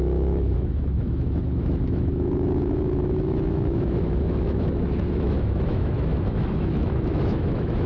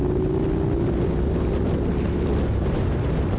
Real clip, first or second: second